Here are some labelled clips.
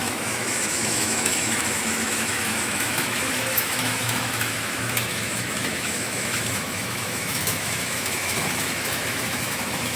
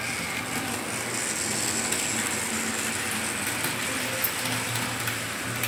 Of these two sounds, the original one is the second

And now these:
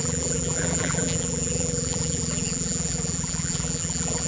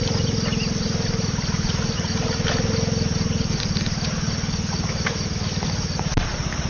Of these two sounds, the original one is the second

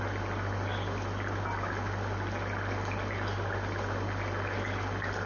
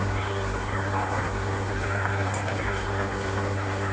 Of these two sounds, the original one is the first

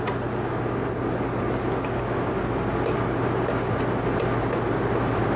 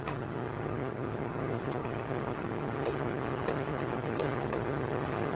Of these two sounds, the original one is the first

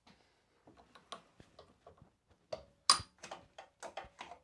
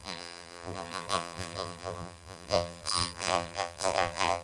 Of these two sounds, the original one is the first